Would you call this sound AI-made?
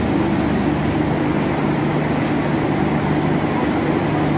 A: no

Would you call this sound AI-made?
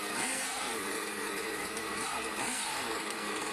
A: yes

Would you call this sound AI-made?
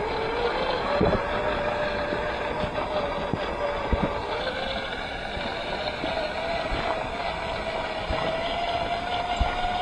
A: no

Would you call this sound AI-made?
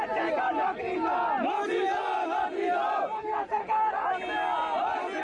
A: no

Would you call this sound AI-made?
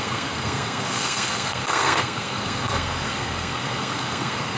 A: yes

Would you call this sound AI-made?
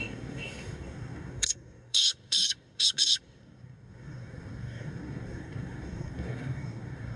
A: yes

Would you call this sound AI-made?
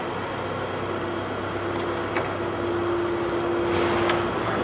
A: no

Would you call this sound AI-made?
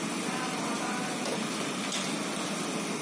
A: no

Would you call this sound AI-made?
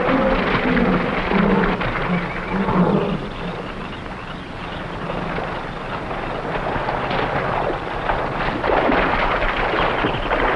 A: no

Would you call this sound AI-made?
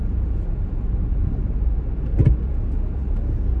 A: no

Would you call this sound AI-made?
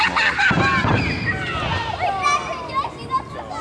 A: no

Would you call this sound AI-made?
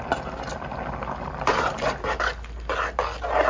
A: no